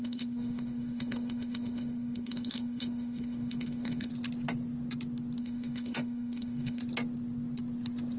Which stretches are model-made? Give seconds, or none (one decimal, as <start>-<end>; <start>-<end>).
0.0-4.1; 5.4-6.8